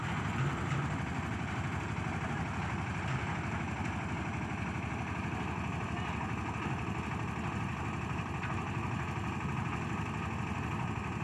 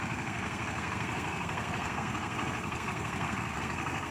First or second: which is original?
first